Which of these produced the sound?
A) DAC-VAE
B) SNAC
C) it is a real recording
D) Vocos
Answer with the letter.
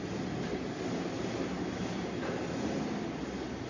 C